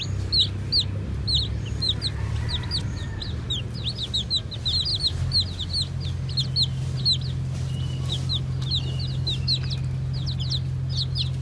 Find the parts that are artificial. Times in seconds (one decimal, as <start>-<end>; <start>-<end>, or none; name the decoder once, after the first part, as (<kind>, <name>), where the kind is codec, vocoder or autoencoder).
none